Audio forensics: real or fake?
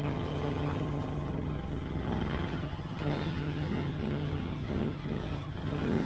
fake